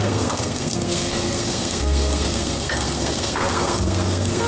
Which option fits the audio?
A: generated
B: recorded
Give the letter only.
A